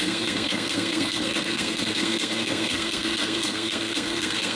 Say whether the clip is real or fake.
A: fake